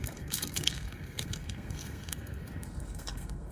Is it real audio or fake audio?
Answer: fake